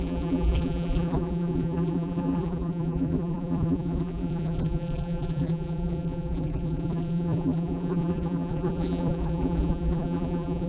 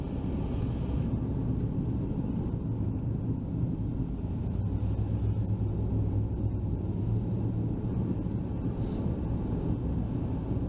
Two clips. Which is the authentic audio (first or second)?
second